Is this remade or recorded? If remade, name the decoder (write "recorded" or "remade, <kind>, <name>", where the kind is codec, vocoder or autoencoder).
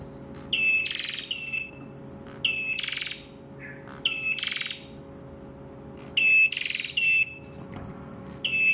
recorded